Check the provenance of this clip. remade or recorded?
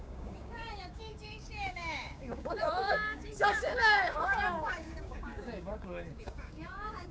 remade